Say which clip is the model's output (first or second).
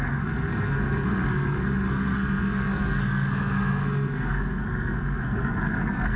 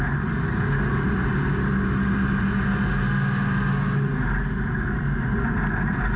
first